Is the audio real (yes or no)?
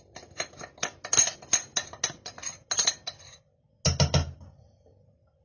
yes